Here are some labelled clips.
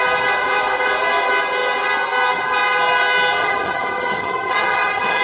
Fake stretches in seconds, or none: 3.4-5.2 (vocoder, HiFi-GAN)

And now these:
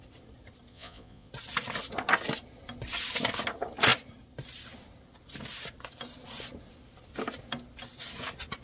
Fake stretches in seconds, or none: 0.7-1.3 (vocoder, Vocos)

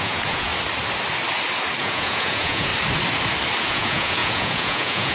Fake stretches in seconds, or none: 0.0-0.5 (vocoder, Vocos); 1.8-2.7; 3.7-5.1

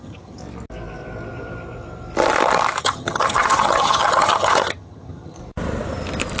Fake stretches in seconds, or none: 0.0-0.4 (vocoder, HiFi-GAN); 2.8-5.4

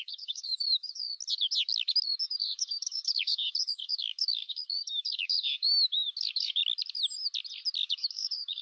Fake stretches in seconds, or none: 0.0-1.0 (codec, DAC); 2.2-6.6; 7.8-8.6